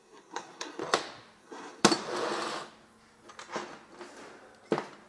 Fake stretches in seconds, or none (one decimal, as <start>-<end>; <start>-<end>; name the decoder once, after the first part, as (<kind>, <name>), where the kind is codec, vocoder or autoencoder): 0.0-0.8 (codec, SNAC); 1.4-1.8